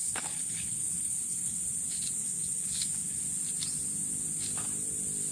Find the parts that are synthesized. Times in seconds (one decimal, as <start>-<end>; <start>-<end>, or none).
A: 0.0-1.6; 2.2-3.2